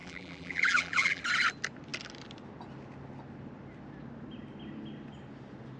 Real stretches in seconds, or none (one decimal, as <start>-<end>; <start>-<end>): 1.2-5.8